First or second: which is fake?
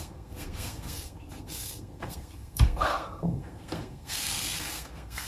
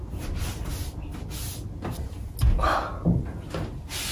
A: first